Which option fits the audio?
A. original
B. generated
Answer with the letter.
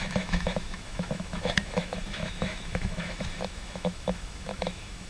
B